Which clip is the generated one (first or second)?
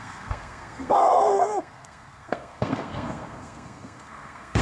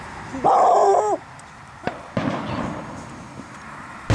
first